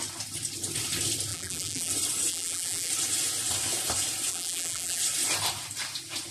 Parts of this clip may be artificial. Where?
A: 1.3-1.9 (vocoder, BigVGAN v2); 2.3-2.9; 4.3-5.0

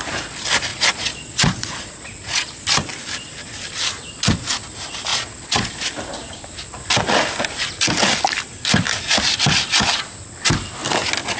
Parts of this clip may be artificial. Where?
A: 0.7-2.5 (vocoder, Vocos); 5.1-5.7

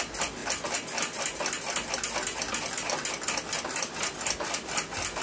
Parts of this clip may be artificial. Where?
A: none